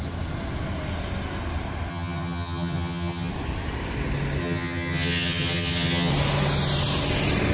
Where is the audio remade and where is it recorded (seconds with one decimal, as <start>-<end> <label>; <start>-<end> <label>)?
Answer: 0.0-1.9 recorded; 1.9-3.3 remade; 3.3-4.4 recorded; 4.4-6.1 remade; 6.1-7.5 recorded